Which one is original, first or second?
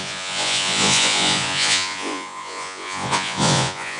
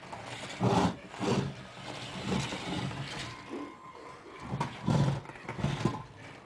second